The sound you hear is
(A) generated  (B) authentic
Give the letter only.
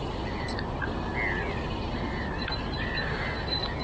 B